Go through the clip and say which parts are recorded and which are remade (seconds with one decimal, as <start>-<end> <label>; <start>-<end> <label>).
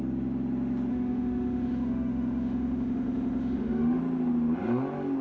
0.0-0.9 recorded; 0.9-4.0 remade; 4.0-5.2 recorded